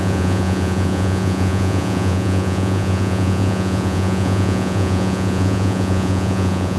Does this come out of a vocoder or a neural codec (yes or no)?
yes